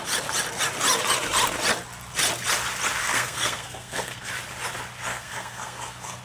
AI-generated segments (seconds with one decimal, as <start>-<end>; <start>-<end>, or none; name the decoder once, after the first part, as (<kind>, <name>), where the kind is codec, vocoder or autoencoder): 3.0-4.3 (codec, SNAC); 5.1-6.2